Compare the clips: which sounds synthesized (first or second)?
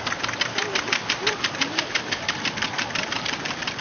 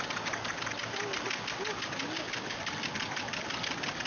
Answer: first